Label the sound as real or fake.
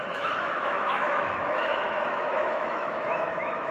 fake